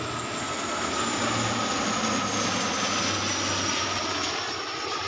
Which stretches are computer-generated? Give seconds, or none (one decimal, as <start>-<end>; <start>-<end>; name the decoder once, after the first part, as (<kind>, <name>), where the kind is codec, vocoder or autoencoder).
0.4-0.9 (codec, SNAC)